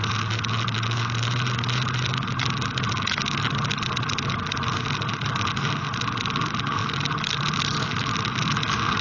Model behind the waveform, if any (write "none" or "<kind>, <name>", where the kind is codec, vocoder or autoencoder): none